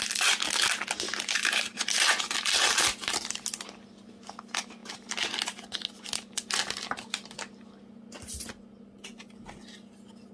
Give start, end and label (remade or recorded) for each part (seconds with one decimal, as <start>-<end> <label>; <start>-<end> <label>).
0.0-10.3 recorded